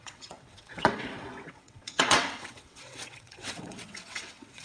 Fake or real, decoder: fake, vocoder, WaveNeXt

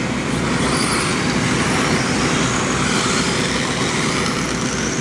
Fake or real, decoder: real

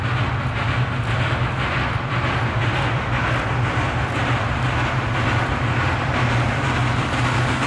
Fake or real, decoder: real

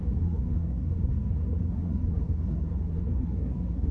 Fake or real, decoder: fake, codec, SNAC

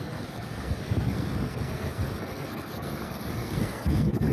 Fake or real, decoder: fake, codec, SNAC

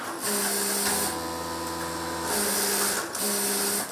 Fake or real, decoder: real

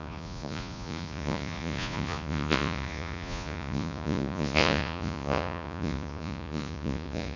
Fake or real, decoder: fake, vocoder, Vocos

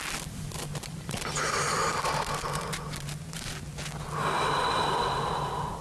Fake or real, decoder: real